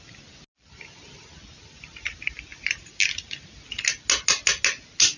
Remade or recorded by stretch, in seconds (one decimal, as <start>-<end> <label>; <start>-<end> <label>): 0.0-5.2 recorded